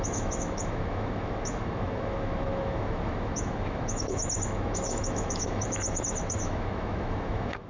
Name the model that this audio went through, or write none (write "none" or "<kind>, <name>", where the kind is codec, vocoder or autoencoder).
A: autoencoder, DAC-VAE